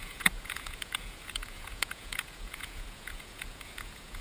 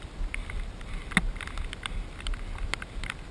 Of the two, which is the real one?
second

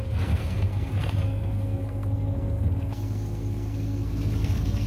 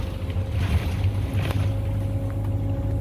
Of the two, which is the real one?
second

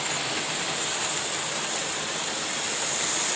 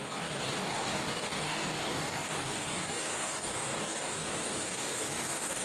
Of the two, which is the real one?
first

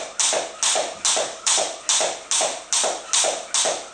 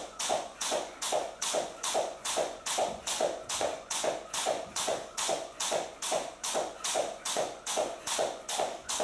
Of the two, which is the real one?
first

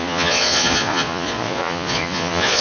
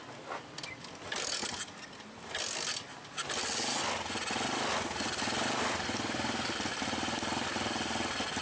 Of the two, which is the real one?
second